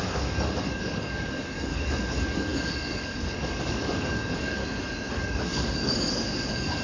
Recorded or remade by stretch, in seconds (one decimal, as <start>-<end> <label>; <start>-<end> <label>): 0.0-4.6 remade; 4.6-5.1 recorded; 5.1-6.8 remade